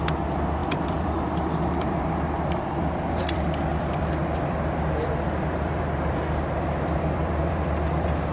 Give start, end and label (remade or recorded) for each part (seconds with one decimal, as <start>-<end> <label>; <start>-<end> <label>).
0.0-8.3 remade